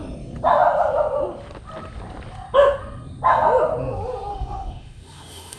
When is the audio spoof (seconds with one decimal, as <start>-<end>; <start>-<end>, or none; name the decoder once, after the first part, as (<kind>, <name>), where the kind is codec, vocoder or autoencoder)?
4.3-5.6 (autoencoder, DAC-VAE)